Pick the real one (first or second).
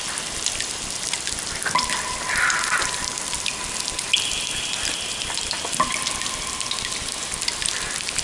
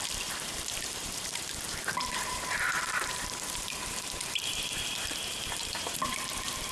first